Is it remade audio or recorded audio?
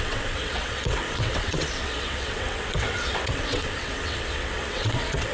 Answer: remade